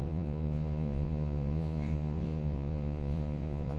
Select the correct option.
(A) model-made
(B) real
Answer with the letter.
A